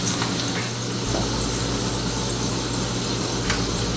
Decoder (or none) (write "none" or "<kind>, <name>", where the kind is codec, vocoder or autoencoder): none